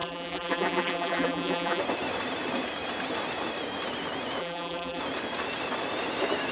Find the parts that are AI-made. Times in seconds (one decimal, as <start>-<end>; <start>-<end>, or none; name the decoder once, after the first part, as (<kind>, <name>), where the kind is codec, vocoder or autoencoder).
0.0-1.8 (vocoder, BigVGAN v2); 4.4-5.0